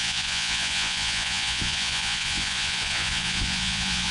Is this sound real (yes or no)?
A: no